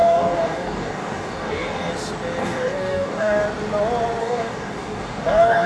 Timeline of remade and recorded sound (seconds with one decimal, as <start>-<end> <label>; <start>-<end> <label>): 0.0-1.9 remade; 1.9-2.4 recorded; 2.4-3.4 remade; 3.4-4.2 recorded; 4.2-5.7 remade